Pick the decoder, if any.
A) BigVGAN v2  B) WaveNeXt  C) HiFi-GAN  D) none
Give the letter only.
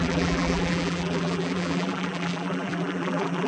A